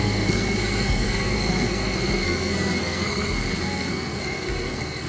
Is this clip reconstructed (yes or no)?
yes